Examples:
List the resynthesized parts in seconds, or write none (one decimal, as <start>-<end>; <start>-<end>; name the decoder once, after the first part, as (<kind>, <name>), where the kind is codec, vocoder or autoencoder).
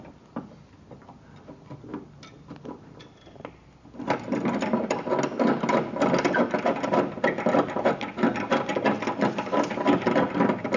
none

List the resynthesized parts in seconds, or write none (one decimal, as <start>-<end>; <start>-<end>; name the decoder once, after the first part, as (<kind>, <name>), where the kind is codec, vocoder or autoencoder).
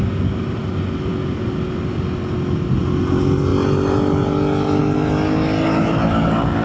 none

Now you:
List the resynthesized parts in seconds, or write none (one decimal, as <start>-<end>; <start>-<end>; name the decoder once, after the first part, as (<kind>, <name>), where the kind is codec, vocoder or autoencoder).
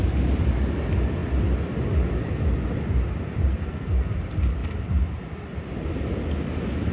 3.5-4.1 (codec, SNAC)